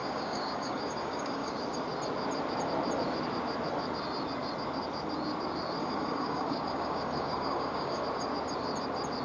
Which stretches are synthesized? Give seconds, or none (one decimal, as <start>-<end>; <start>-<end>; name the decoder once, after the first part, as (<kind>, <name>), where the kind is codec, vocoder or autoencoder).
0.0-1.5 (codec, DAC); 5.8-8.0